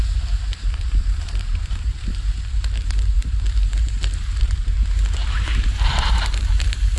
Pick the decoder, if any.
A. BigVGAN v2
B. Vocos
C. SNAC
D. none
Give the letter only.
A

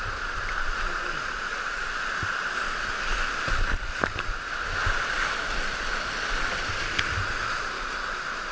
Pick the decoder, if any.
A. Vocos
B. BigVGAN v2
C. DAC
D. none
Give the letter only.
D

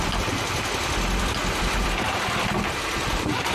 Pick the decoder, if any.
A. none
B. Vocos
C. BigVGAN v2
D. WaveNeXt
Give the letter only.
C